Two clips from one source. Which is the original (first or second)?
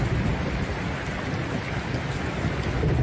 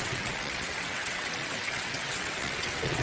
first